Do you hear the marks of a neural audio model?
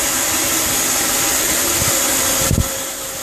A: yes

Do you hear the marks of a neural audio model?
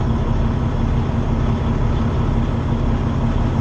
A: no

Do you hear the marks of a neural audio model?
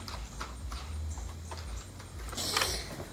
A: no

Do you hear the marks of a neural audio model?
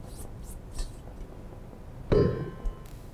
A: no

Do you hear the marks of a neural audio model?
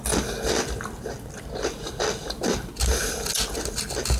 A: no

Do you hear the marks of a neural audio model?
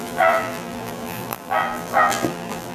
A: yes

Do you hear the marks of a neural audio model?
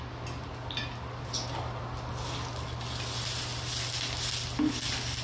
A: no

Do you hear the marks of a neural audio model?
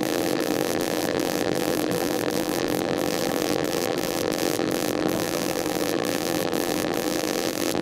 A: yes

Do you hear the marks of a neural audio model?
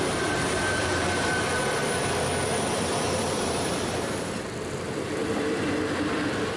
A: yes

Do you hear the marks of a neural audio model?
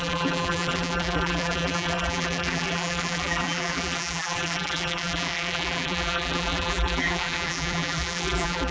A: yes